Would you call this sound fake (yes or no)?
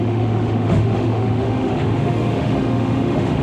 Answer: yes